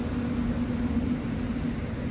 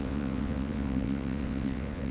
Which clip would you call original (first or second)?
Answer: first